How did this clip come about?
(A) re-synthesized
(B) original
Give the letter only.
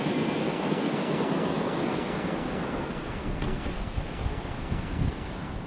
A